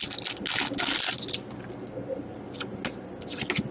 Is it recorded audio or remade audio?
recorded